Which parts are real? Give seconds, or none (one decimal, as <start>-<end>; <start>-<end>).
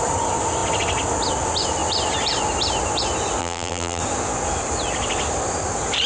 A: 0.0-3.4; 4.0-6.1